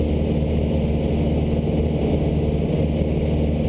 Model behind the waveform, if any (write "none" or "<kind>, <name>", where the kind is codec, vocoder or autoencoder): none